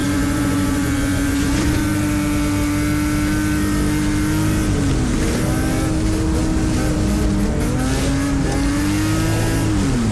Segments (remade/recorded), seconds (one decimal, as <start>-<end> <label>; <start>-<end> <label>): 0.0-1.8 remade; 1.8-10.1 recorded